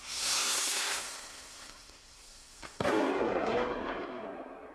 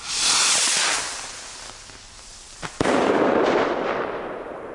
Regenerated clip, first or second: first